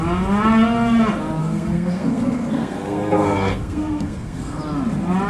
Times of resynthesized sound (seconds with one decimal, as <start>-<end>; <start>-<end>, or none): 1.4-4.6